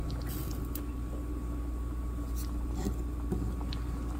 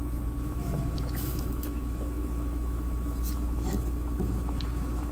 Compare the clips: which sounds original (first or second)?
first